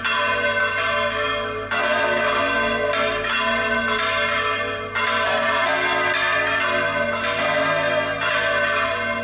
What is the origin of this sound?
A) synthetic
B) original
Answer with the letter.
B